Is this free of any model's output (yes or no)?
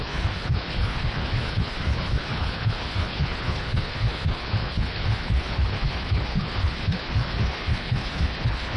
no